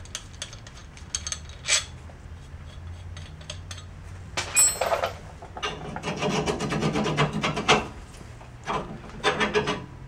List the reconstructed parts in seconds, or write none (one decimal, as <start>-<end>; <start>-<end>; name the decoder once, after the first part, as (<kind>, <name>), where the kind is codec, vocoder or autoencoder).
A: none